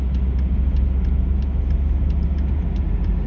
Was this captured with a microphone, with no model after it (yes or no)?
yes